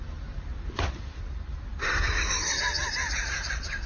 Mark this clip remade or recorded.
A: remade